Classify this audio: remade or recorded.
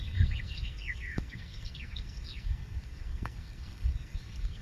remade